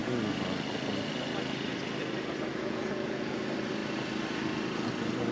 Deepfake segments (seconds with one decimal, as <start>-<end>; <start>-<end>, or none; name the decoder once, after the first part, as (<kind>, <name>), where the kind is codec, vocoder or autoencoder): 2.5-3.4 (vocoder, Vocos)